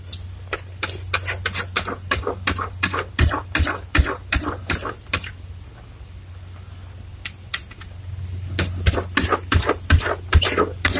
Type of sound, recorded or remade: remade